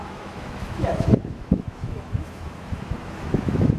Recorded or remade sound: remade